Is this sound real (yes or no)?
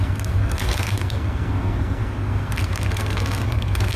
no